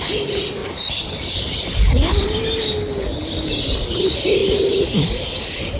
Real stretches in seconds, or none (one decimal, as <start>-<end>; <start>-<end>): 0.0-0.6; 2.4-4.4